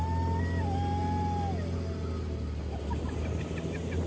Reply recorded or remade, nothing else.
recorded